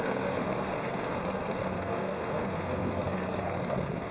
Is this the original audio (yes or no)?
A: no